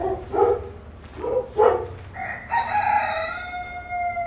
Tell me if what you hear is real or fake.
real